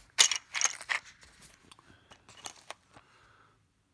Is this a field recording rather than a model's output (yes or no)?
yes